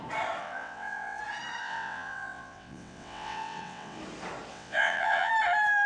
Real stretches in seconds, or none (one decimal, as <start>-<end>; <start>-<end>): 0.0-0.4; 1.2-1.6; 4.0-4.5; 5.3-5.9

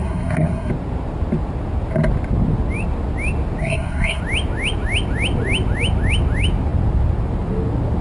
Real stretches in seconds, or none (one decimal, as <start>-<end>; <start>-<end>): 0.7-3.6; 4.2-8.0

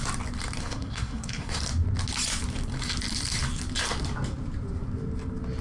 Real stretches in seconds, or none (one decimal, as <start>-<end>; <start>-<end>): 0.0-0.6; 1.6-5.6

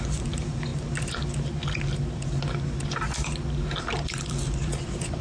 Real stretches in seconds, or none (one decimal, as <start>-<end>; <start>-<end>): 0.7-3.8

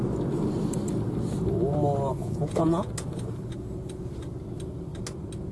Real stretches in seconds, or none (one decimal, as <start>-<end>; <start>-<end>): 0.0-2.2; 2.9-5.5

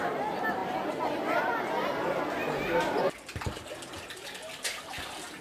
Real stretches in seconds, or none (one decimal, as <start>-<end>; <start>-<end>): 0.0-5.4